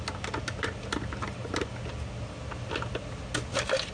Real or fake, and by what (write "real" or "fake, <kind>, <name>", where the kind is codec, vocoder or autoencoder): real